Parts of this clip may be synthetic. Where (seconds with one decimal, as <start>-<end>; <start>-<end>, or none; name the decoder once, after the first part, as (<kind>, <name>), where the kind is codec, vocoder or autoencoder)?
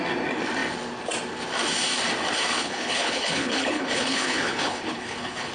2.5-5.5 (codec, HILCodec)